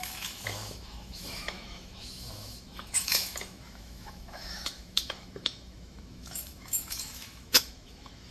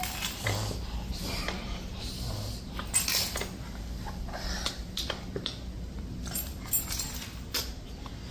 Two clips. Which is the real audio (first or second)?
second